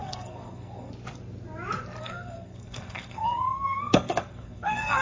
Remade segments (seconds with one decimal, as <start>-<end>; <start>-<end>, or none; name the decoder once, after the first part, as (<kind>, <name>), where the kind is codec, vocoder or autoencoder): 0.0-0.9 (codec, SNAC); 2.0-5.0